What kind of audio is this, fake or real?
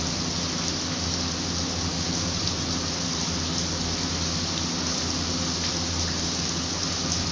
real